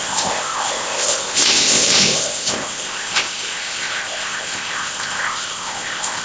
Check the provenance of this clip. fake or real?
fake